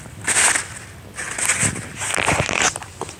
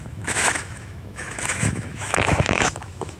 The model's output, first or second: second